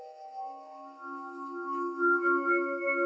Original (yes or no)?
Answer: no